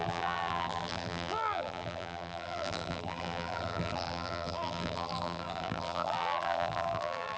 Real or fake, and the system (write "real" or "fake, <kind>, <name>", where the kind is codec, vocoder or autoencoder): fake, vocoder, BigVGAN v2